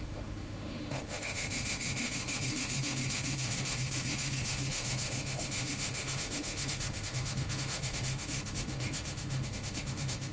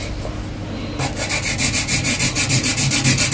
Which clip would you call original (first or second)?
second